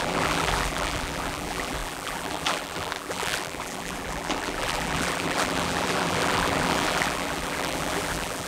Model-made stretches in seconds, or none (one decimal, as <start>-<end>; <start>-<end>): 0.0-8.5